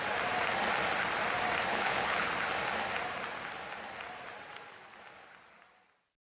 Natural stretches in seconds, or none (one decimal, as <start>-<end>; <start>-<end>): 0.0-1.7; 2.3-6.3